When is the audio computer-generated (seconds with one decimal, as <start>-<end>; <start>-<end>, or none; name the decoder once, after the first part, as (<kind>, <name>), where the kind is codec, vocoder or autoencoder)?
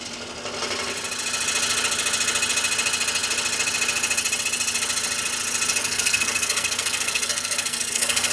5.8-8.3 (codec, SNAC)